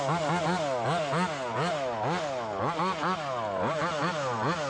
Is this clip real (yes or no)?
yes